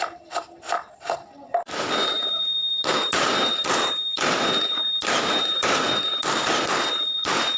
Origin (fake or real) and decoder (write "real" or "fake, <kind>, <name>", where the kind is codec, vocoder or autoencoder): real